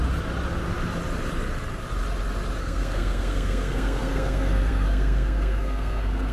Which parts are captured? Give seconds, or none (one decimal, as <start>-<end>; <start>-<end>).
0.0-2.6

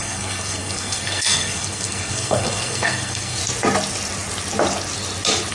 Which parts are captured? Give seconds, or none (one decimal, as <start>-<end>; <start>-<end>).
3.4-5.5

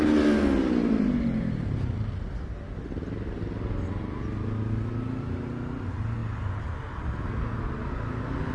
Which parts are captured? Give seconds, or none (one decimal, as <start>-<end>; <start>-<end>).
0.0-8.5

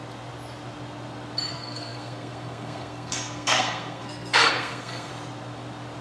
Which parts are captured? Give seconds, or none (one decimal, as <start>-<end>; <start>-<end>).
0.0-1.5; 5.1-6.0

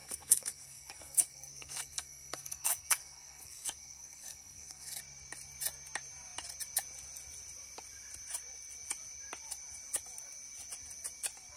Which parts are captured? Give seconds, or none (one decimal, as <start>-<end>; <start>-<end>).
5.0-11.6

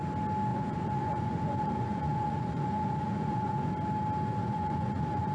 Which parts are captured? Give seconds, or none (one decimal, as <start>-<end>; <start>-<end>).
0.0-0.5; 3.7-4.4